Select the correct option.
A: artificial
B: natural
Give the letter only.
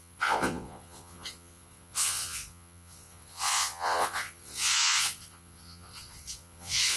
A